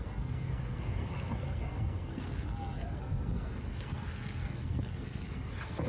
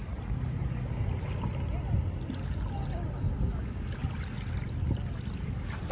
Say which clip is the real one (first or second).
second